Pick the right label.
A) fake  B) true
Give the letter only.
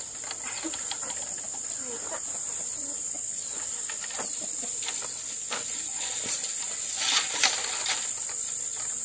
B